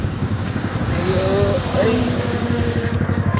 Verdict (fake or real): fake